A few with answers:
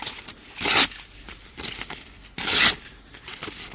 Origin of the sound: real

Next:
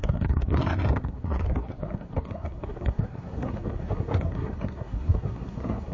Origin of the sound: fake